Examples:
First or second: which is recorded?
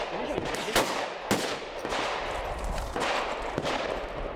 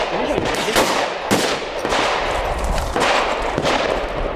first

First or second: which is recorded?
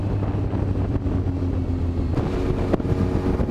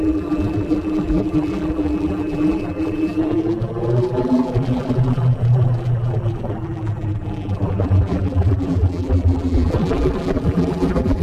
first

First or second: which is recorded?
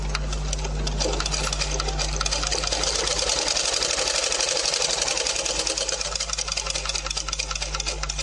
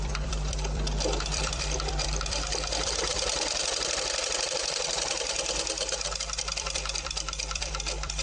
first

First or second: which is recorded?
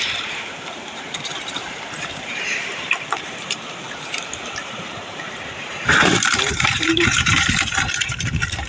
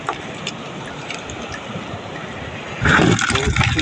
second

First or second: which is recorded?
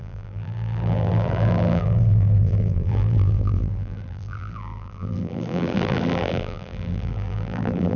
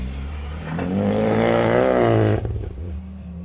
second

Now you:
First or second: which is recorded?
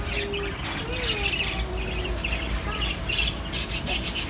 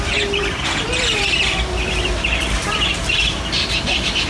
first